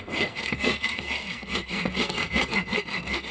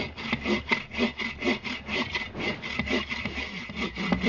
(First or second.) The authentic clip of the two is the second